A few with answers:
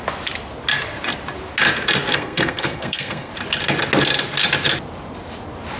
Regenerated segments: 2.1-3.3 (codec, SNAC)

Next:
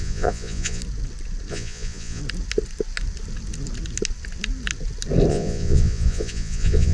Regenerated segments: 0.0-0.8 (vocoder, Vocos); 1.5-2.2; 5.3-6.9

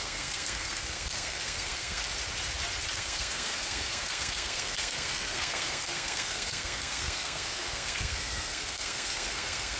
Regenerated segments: 0.0-2.0 (codec, SNAC); 2.9-9.8

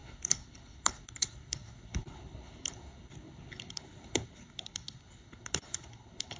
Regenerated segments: 0.0-6.4 (codec, HILCodec)